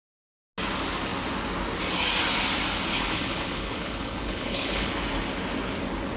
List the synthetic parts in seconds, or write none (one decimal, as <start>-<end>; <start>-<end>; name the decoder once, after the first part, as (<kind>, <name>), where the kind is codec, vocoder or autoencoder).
2.9-4.9 (codec, HILCodec)